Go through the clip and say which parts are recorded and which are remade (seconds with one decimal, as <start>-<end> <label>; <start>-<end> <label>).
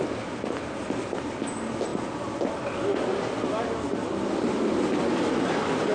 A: 0.0-5.9 recorded